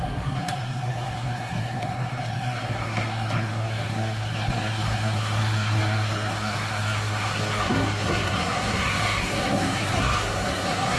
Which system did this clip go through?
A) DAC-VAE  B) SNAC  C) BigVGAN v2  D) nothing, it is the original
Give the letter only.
B